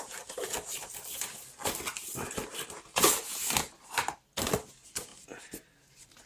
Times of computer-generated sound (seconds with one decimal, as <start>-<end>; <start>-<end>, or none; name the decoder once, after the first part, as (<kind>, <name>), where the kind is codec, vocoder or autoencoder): none